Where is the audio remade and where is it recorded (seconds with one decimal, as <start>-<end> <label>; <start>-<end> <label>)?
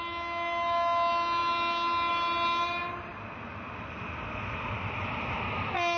0.0-6.0 recorded